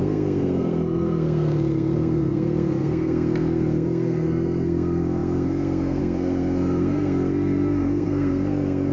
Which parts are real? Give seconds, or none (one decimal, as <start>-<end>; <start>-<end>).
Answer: none

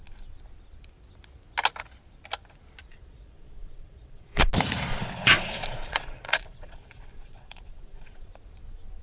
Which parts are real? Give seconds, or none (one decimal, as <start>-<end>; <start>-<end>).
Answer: 0.0-2.9; 4.5-4.9; 8.3-9.0